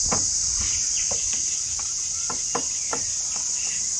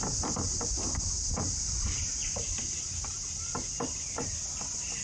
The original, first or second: first